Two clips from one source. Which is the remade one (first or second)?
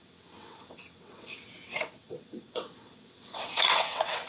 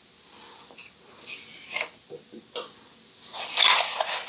first